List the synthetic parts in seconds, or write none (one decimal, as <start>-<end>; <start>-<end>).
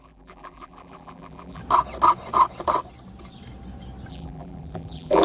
0.0-1.6; 4.1-5.2